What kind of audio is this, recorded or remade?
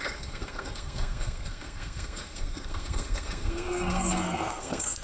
remade